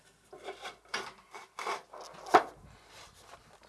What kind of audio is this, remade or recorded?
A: recorded